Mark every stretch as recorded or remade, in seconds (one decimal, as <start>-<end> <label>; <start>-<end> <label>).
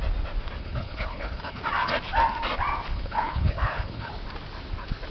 0.0-0.6 recorded; 0.6-1.6 remade; 1.6-2.9 recorded; 2.9-4.1 remade; 4.1-5.1 recorded